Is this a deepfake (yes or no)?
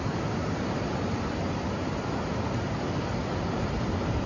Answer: no